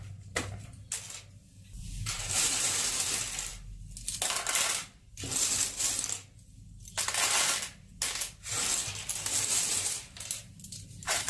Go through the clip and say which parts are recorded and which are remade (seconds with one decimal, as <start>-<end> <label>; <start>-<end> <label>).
0.0-2.1 recorded; 2.1-2.6 remade; 2.6-9.7 recorded; 9.7-11.3 remade